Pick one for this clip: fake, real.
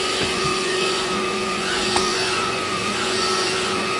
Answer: fake